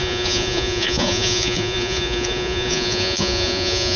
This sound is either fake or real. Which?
fake